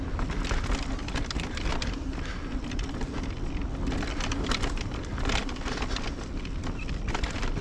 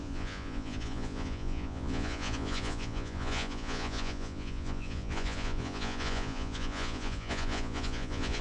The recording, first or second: first